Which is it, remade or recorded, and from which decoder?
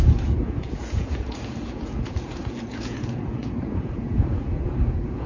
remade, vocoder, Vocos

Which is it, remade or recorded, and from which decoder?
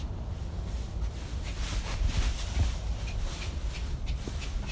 recorded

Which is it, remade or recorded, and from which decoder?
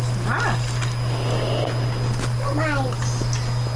recorded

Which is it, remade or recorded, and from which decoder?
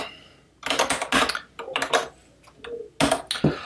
recorded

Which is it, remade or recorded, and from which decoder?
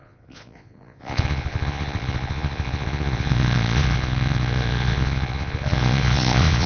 remade, vocoder, Vocos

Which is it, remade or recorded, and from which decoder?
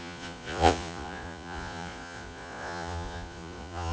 remade, vocoder, Vocos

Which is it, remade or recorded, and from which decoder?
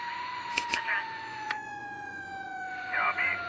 remade, vocoder, Vocos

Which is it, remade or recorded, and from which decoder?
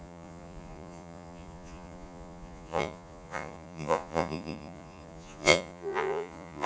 remade, vocoder, Vocos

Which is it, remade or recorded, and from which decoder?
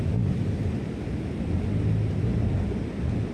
recorded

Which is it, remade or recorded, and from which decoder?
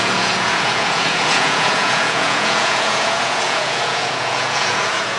remade, vocoder, Vocos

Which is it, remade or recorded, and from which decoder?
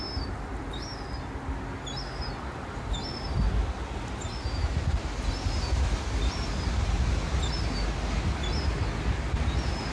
recorded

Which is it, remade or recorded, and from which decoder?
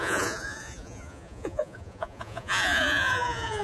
remade, vocoder, Vocos